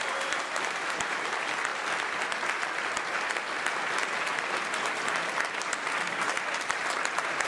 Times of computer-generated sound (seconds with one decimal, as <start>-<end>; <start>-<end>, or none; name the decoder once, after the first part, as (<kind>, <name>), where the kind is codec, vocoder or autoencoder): 0.0-1.7 (vocoder, BigVGAN v2); 6.1-7.5